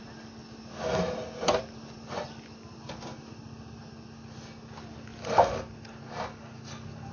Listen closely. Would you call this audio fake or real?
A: real